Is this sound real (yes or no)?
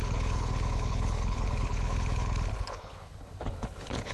no